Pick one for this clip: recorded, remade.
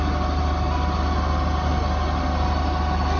recorded